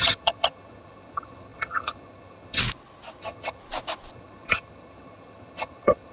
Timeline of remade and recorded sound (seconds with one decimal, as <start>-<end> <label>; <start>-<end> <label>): 0.0-2.6 remade; 2.6-3.2 recorded; 3.2-3.6 remade; 3.6-4.1 recorded; 4.1-6.1 remade